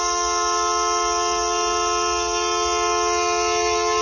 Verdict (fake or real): real